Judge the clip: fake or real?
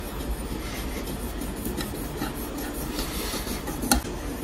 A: real